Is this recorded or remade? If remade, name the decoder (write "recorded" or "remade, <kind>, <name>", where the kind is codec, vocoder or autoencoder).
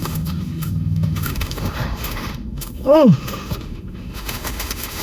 remade, autoencoder, DAC-VAE